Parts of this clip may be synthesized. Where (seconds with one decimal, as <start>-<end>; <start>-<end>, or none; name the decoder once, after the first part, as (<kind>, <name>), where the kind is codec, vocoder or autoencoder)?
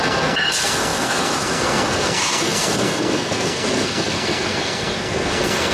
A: 0.0-5.7 (codec, SNAC)